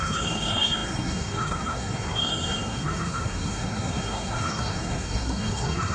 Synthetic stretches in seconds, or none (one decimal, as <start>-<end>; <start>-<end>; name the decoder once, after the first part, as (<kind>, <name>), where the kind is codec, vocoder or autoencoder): 0.0-5.9 (codec, SNAC)